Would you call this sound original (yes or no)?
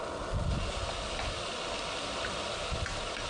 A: yes